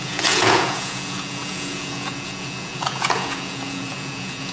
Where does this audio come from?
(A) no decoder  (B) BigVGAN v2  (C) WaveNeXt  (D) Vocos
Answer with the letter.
D